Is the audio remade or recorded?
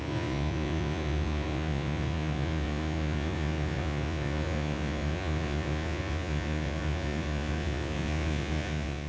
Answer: remade